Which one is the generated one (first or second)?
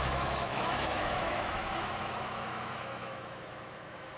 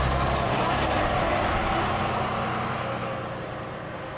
first